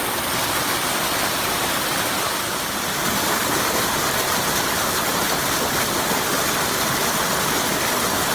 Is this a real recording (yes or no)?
yes